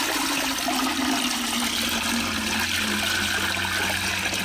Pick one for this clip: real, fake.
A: real